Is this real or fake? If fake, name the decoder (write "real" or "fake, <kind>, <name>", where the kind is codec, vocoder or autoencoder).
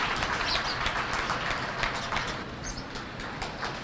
real